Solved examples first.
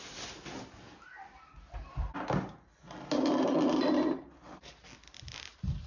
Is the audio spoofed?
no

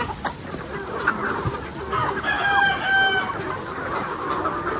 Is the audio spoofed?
no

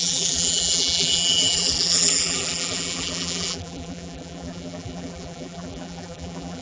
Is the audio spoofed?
yes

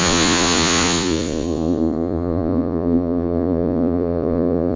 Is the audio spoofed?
yes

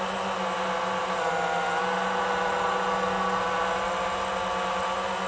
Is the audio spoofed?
no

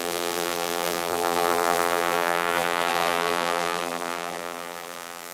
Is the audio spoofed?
yes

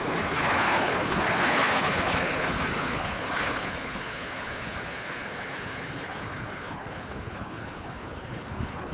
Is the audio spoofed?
yes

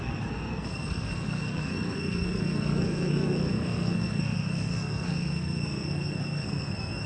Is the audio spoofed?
yes